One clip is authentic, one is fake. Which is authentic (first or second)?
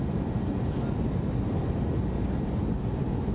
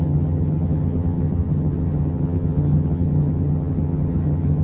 first